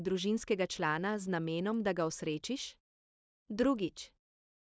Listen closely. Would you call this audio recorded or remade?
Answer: recorded